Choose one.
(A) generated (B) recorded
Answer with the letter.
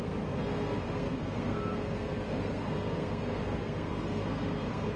A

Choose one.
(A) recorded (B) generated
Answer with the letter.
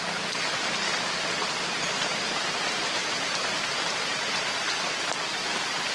A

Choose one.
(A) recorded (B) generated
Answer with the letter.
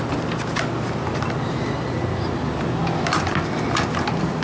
A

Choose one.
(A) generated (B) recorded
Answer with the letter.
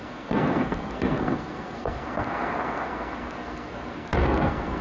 A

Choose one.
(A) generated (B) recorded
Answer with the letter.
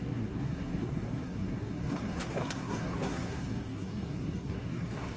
A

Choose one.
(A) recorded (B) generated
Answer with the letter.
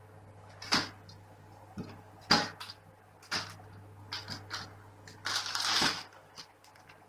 A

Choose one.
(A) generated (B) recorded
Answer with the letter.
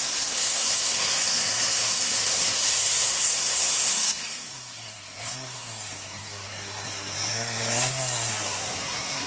A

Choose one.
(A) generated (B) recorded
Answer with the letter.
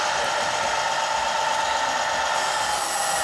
B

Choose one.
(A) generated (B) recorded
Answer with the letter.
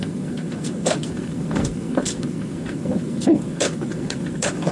A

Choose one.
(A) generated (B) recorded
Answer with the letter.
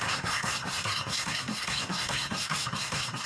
A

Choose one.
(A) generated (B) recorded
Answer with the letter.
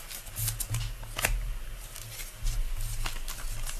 B